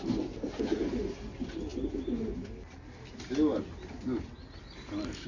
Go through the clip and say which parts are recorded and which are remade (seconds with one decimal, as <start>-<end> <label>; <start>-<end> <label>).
0.0-5.3 recorded